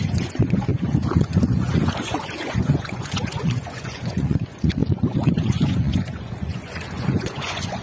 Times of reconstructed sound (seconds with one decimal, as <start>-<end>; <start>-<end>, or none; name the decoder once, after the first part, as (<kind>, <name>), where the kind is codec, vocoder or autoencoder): 0.0-7.8 (vocoder, Vocos)